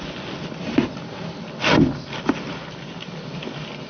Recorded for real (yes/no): yes